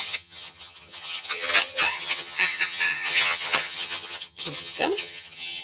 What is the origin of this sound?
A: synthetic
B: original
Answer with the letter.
A